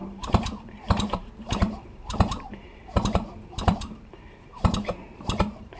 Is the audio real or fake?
fake